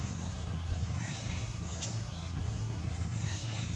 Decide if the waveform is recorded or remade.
remade